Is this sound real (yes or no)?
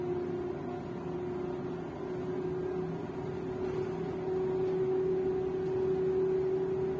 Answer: yes